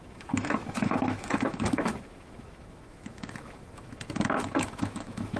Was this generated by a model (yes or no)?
yes